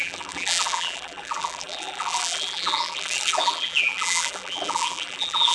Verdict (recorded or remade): remade